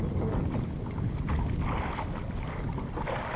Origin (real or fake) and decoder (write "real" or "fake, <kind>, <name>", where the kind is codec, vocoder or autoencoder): real